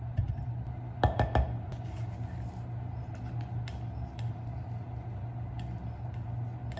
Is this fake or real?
real